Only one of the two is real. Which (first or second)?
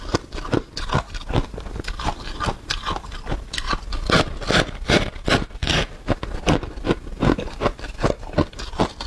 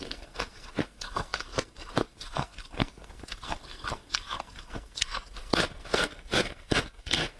first